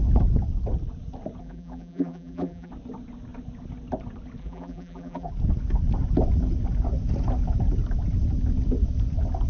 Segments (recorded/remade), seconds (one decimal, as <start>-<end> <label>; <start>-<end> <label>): 0.0-1.4 recorded; 1.4-2.7 remade; 2.7-4.4 recorded; 4.4-5.3 remade; 5.3-9.5 recorded